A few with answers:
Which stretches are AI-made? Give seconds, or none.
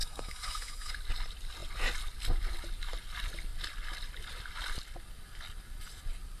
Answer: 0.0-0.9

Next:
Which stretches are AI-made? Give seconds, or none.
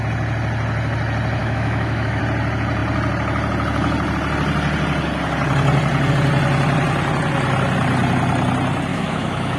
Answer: 1.4-2.2; 8.9-9.6